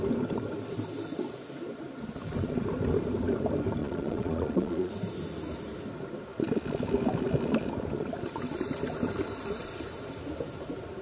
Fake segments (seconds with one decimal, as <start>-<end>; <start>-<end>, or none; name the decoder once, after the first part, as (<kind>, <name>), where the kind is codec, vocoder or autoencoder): 3.8-4.9 (vocoder, Vocos)